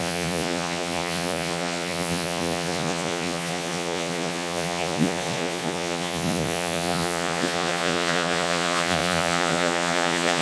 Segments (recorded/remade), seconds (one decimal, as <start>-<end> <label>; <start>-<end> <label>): 0.0-10.4 remade